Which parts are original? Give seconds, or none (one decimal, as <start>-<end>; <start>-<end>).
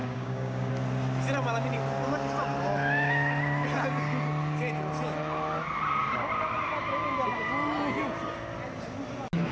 0.7-9.5